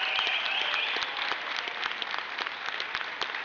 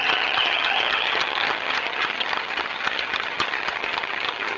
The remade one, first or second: second